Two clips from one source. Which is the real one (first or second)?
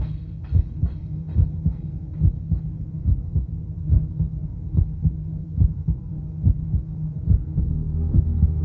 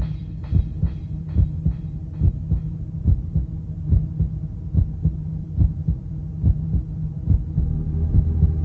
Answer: second